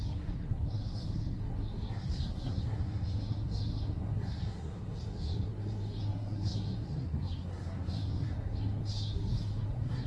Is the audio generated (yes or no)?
yes